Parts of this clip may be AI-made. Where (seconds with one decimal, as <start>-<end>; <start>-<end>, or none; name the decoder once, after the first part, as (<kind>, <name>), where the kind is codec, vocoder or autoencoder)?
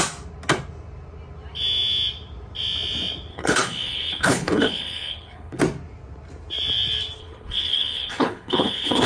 3.3-5.6 (codec, HILCodec); 7.2-9.1